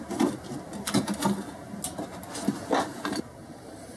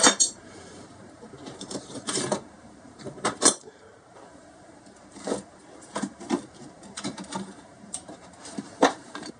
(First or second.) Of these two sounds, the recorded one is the first